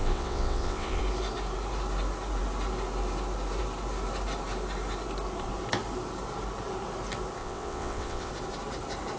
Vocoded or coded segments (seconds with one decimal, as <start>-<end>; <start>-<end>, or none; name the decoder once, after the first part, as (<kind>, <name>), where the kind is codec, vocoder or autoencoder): 0.0-1.0 (vocoder, WaveNeXt); 7.4-8.3